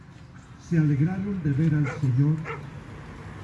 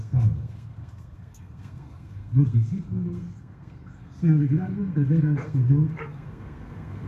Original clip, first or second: first